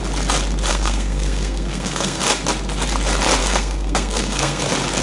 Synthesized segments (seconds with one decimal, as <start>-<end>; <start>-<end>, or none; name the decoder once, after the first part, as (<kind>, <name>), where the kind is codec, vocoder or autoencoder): 0.7-2.2 (codec, SNAC); 3.4-4.6

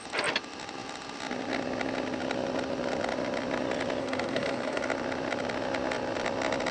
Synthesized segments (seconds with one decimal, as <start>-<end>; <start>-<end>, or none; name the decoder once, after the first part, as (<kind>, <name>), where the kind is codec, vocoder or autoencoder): 4.0-4.8 (codec, SNAC)

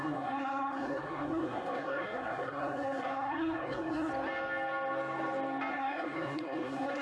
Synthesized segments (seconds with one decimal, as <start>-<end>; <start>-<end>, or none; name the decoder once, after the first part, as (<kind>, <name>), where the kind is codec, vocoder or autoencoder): 0.0-4.1 (codec, SNAC); 5.7-7.0

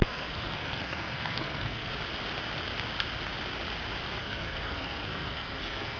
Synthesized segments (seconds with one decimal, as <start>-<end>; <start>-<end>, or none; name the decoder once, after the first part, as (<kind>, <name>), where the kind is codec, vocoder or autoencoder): 0.0-1.9 (codec, SNAC); 4.2-6.0